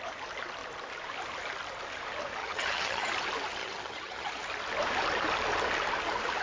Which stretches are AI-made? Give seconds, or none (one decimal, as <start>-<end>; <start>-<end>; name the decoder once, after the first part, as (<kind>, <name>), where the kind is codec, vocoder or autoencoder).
2.4-3.1 (vocoder, HiFi-GAN); 3.6-4.4